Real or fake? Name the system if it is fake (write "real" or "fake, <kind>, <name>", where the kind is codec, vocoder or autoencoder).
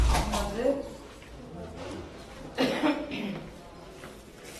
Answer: real